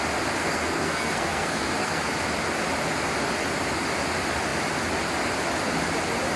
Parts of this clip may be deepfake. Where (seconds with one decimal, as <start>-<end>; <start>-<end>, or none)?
0.4-2.0